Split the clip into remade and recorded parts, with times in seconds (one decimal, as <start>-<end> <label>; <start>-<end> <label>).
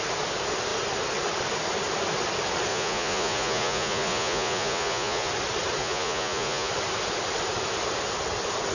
0.0-2.7 recorded; 2.7-5.3 remade; 5.3-5.8 recorded; 5.8-6.7 remade; 6.7-8.7 recorded